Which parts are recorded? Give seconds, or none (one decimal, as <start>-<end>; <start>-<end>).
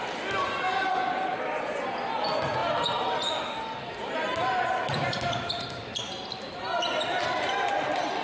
0.0-8.2